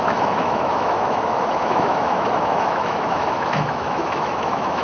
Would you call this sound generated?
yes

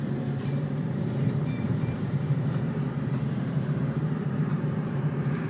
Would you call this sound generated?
yes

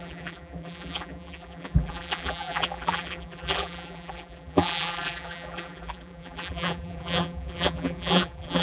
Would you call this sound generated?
yes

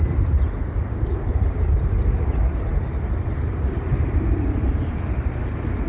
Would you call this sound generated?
yes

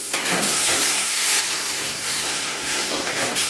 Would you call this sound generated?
yes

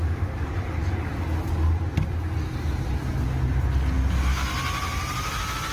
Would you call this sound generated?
no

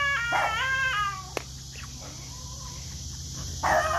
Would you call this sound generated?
no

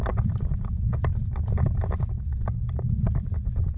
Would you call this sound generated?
no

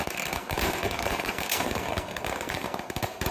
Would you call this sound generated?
yes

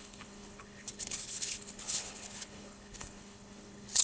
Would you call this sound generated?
yes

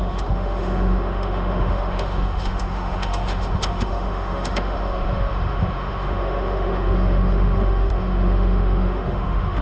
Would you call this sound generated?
yes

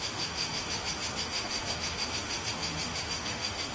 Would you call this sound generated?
yes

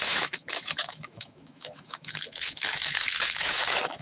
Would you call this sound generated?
yes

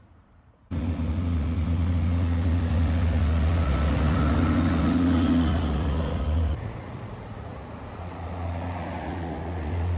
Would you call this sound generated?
yes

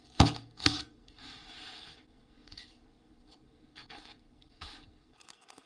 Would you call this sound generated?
yes